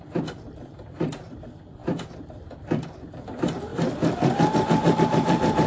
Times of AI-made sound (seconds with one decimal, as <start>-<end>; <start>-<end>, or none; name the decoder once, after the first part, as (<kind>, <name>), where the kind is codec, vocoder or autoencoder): 0.0-3.7 (vocoder, BigVGAN v2); 5.0-5.7